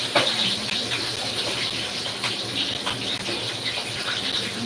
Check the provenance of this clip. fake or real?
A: real